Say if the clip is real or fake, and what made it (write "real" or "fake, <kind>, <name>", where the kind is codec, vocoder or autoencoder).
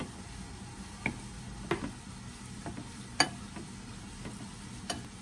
real